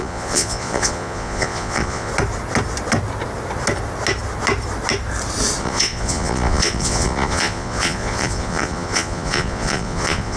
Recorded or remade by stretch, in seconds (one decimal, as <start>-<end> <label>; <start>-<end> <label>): 0.0-2.1 remade; 2.1-5.6 recorded; 5.6-10.4 remade